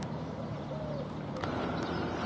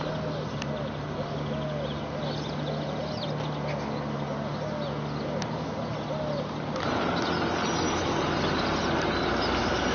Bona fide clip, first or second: second